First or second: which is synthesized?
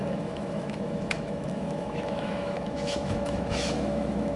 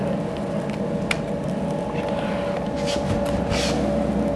first